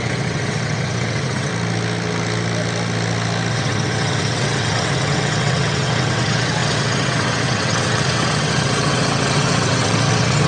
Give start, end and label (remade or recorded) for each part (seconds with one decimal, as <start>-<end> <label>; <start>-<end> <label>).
0.0-1.5 remade; 1.5-3.5 recorded; 3.5-10.5 remade